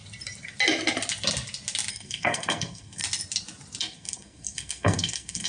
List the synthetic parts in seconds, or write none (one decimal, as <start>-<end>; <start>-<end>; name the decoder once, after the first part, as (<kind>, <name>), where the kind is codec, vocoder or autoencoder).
1.9-3.0 (codec, SNAC); 3.8-5.5

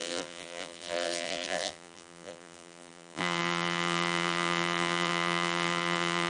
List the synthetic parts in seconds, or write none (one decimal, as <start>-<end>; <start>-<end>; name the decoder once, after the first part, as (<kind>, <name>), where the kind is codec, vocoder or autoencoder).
0.0-6.3 (vocoder, BigVGAN v2)